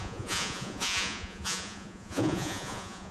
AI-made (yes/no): yes